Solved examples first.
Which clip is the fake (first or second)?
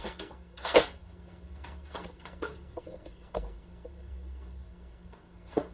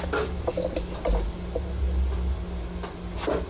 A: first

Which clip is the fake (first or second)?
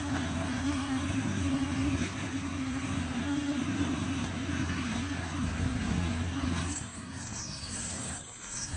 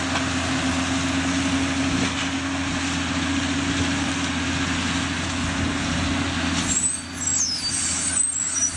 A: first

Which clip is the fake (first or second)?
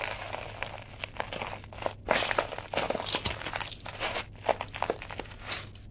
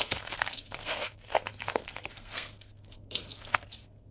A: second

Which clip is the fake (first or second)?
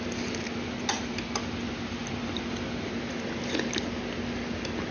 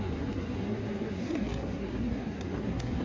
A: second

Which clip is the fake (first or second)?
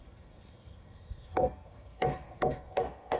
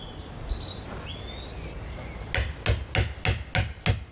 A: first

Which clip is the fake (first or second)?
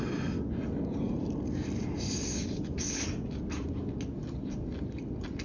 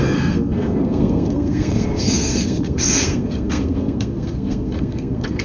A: second